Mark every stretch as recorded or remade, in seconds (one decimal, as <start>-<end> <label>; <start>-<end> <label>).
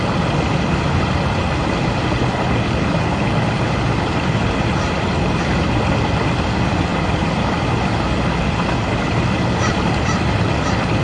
0.0-6.9 recorded; 6.9-7.5 remade; 7.5-11.0 recorded